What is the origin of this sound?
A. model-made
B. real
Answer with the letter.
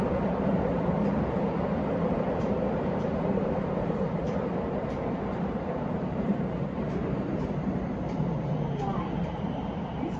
A